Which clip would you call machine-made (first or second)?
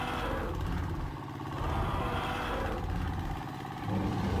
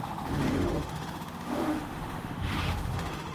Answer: second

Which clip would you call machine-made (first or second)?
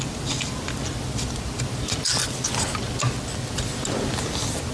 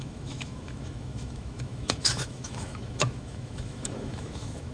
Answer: second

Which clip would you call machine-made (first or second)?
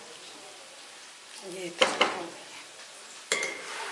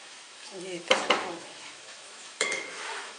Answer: second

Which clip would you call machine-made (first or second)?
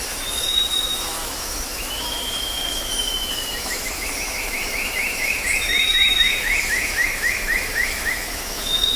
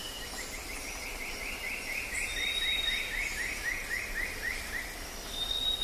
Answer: first